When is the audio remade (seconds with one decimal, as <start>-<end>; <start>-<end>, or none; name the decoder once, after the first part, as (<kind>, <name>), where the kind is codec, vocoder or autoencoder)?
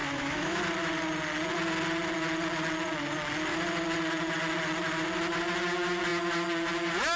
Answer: 0.0-0.6 (autoencoder, DAC-VAE)